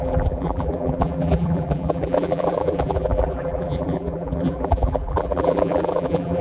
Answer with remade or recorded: remade